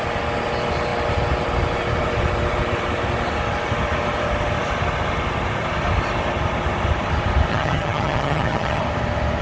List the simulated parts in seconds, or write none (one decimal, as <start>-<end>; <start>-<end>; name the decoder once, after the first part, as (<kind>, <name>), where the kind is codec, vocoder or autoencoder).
7.5-8.8 (vocoder, HiFi-GAN)